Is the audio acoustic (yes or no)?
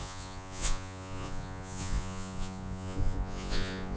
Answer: no